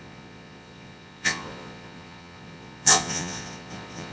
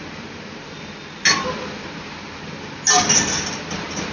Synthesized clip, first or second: first